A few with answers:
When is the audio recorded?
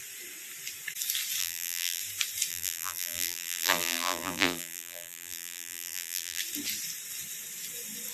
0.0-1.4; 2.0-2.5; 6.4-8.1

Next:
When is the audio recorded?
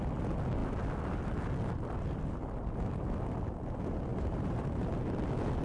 0.0-4.1; 4.9-5.6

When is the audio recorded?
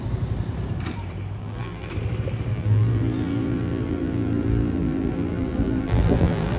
0.0-1.4; 1.9-2.5